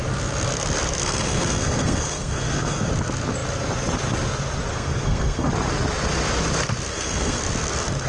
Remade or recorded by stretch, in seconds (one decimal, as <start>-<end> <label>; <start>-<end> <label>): 0.0-1.0 recorded; 1.0-2.9 remade; 2.9-4.7 recorded; 4.7-5.5 remade; 5.5-6.9 recorded; 6.9-7.4 remade; 7.4-8.1 recorded